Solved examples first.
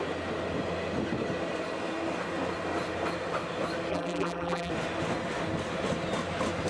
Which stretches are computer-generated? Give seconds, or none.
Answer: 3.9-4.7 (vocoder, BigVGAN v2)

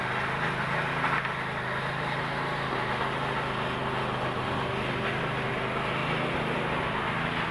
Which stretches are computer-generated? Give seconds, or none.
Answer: none

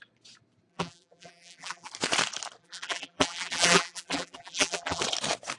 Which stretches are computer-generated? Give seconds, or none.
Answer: 0.7-1.9 (vocoder, BigVGAN v2); 2.6-5.0

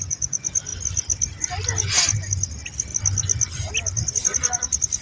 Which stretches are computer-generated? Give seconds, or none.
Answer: 0.7-1.5 (vocoder, BigVGAN v2); 2.9-3.7